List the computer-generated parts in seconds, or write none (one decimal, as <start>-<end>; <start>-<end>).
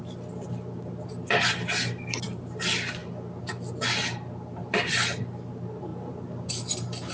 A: 0.0-3.0; 5.2-5.9; 6.5-7.1